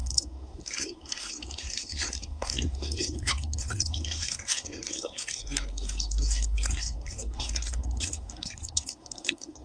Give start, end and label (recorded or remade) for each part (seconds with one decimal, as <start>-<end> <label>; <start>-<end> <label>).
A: 0.0-9.6 remade